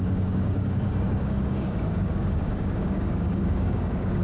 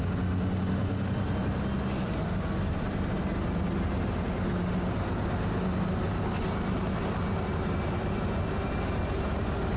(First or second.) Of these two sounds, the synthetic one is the first